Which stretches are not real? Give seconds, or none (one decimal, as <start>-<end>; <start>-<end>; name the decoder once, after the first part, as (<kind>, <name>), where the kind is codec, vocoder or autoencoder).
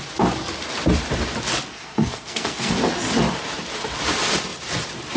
1.7-2.7 (codec, SNAC)